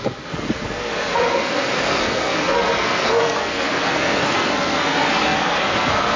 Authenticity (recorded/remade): remade